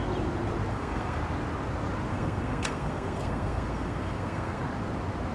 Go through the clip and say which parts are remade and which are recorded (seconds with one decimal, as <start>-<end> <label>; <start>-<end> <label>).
0.0-0.7 recorded; 0.7-1.2 remade; 1.2-2.1 recorded; 2.1-4.6 remade; 4.6-5.3 recorded